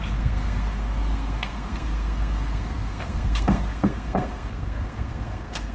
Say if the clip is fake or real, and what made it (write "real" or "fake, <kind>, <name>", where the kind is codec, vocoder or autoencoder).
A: fake, codec, SNAC